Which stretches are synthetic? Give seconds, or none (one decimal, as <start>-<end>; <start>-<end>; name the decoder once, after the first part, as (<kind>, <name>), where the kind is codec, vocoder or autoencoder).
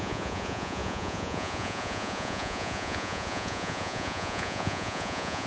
0.0-5.5 (vocoder, Vocos)